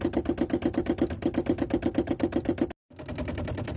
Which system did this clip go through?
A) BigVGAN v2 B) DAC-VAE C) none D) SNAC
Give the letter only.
C